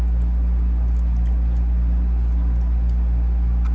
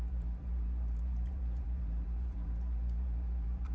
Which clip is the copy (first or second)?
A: second